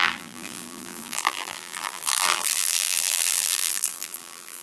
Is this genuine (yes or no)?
no